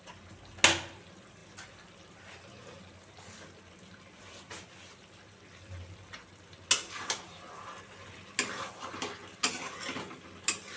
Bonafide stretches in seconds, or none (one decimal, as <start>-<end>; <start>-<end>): 0.0-10.8